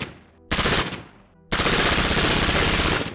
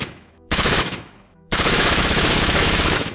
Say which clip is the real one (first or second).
first